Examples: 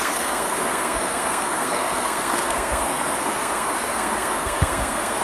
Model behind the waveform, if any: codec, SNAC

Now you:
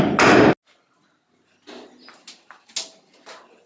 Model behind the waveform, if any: none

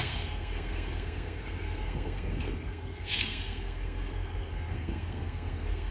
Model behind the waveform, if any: codec, SNAC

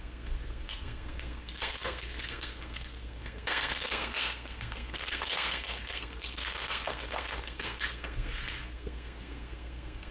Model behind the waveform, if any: codec, SNAC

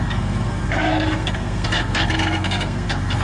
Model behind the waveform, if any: codec, SNAC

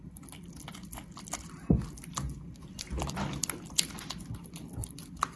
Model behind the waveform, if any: none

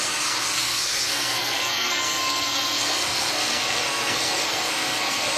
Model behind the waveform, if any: codec, SNAC